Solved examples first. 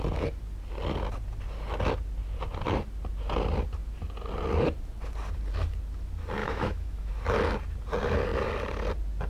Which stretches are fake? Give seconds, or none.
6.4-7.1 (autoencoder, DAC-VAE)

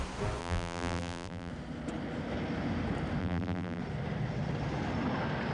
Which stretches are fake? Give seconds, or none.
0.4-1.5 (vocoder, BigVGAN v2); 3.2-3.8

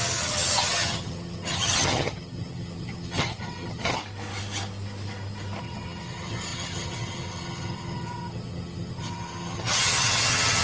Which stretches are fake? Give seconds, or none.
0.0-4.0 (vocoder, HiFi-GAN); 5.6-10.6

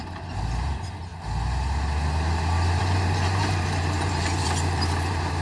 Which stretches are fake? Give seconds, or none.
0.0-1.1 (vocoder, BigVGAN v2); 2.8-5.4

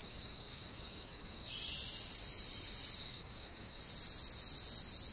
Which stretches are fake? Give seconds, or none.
0.0-1.5 (codec, DAC); 3.0-3.8

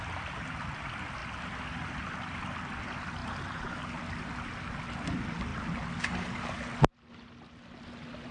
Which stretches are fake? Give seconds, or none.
none

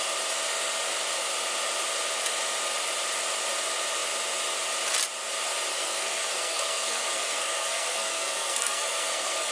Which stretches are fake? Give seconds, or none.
5.7-9.5 (codec, SNAC)